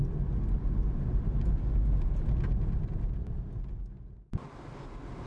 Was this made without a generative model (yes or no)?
yes